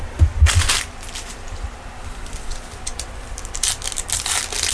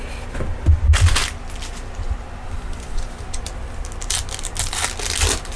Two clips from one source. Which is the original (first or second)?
second